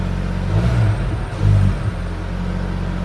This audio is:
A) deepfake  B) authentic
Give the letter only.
B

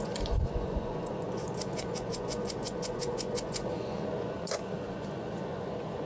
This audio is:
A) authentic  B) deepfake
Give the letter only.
B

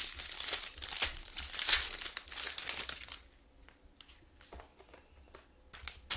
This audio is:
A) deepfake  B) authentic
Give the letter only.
B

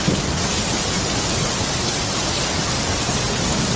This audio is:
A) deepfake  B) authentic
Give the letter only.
B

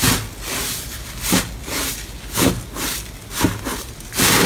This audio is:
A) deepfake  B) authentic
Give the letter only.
B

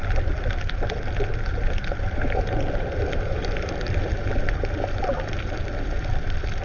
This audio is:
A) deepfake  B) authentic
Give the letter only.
B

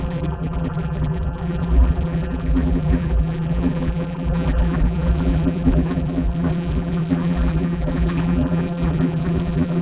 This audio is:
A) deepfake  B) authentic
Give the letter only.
A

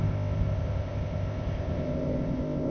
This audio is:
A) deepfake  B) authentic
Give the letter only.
A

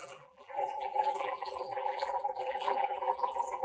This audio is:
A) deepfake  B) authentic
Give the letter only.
A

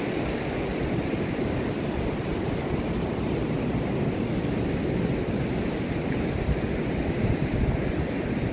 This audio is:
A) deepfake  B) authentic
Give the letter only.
B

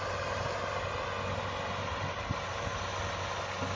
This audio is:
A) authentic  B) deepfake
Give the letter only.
A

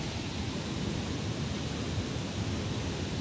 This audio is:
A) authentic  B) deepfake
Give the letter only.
A